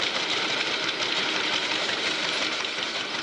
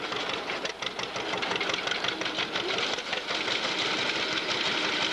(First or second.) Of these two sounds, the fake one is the first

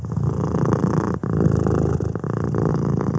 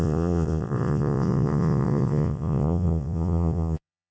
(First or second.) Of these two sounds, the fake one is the second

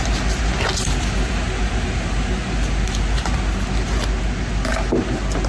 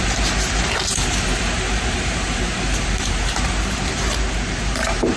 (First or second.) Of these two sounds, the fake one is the second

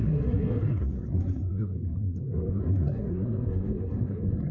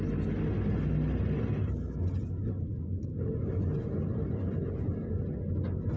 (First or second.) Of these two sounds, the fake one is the first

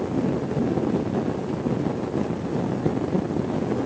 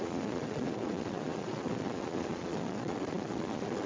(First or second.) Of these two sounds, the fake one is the second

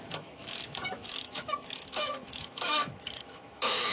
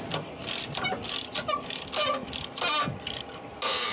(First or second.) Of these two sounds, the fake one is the first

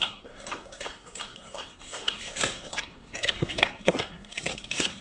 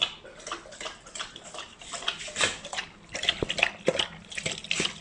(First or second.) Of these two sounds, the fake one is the first